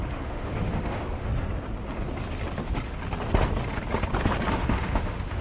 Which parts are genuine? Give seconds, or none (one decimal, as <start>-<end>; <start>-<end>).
1.3-4.5